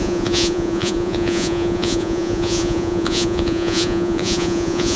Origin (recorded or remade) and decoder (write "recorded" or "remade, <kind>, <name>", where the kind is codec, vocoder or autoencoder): remade, vocoder, Vocos